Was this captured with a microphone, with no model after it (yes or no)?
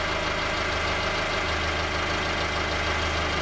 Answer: yes